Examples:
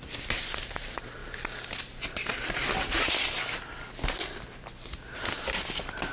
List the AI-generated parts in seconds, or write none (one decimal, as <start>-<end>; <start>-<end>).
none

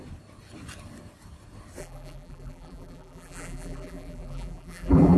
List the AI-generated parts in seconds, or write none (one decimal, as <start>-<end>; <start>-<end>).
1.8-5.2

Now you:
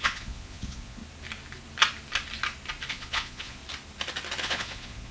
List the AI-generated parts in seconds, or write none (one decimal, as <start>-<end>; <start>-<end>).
0.0-1.0; 2.9-3.6; 4.4-5.1

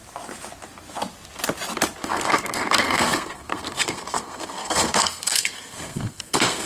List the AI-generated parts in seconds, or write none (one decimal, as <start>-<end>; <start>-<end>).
2.0-6.7

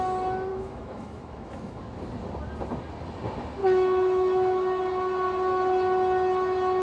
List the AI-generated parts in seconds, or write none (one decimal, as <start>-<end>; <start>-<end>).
0.5-1.8; 3.6-4.8

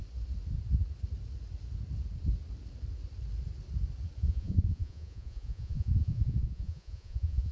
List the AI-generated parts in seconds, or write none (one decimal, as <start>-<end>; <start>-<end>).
4.2-7.5

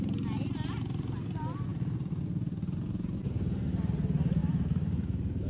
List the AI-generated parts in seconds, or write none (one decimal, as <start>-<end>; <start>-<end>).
4.4-5.5

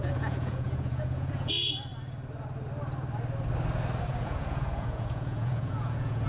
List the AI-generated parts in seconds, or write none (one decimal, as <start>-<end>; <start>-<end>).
0.0-1.9; 4.0-6.3